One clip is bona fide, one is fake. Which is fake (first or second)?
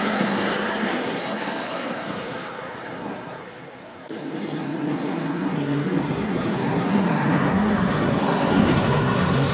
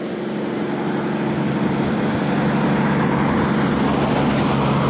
first